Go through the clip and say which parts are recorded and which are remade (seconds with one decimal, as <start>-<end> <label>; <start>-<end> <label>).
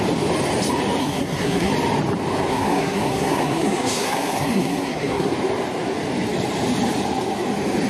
0.0-1.0 recorded; 1.0-1.7 remade; 1.7-2.5 recorded; 2.5-5.3 remade; 5.3-7.9 recorded